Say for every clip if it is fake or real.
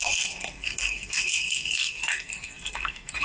fake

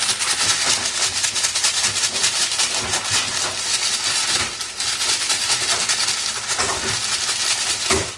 real